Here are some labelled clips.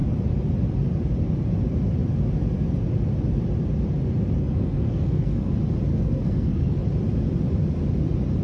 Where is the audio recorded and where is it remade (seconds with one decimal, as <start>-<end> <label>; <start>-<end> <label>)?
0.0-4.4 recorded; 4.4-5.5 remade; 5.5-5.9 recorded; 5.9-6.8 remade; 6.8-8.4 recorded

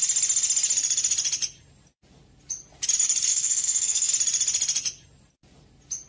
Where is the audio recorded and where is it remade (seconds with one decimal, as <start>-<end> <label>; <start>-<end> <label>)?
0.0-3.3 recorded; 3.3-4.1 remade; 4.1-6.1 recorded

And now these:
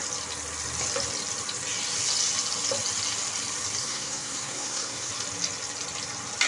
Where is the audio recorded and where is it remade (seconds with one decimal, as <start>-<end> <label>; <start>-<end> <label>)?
0.0-3.8 recorded; 3.8-5.1 remade; 5.1-6.5 recorded

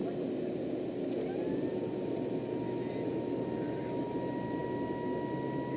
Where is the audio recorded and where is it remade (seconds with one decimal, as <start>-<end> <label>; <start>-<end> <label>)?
0.0-5.8 recorded

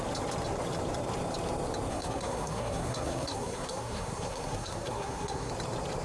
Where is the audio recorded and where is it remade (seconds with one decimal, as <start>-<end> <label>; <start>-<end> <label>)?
0.0-1.9 recorded; 1.9-5.5 remade; 5.5-6.0 recorded